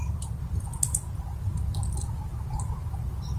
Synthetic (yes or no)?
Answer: no